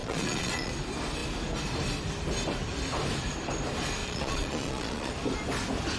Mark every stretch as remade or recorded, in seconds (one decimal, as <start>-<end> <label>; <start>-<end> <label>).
0.0-0.7 remade; 0.7-4.0 recorded; 4.0-5.1 remade; 5.1-6.0 recorded

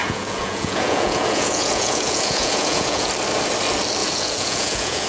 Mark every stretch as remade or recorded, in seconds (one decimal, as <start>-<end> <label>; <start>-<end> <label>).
0.0-3.1 remade; 3.1-4.0 recorded; 4.0-5.1 remade

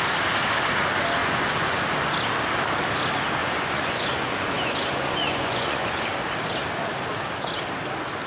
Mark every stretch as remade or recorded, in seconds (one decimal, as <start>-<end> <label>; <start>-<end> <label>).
0.0-1.2 recorded; 1.2-1.8 remade; 1.8-3.4 recorded; 3.4-6.0 remade; 6.0-8.3 recorded

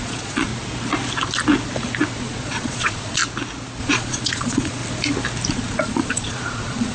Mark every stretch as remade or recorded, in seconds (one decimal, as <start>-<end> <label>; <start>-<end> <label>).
0.0-0.5 remade; 0.5-2.2 recorded; 2.2-3.2 remade; 3.2-3.8 recorded; 3.8-4.8 remade; 4.8-5.5 recorded; 5.5-6.9 remade